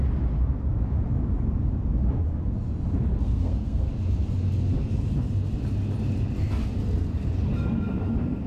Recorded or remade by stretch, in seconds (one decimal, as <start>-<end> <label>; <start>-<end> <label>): 0.0-3.2 recorded; 3.2-3.9 remade; 3.9-8.5 recorded